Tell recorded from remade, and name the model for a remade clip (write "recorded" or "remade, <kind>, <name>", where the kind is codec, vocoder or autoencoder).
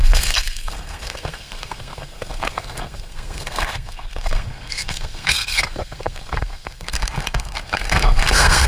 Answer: remade, codec, SNAC